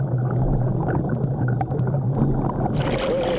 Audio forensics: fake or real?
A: real